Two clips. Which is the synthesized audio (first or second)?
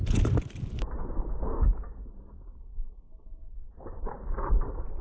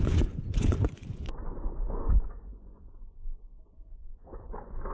second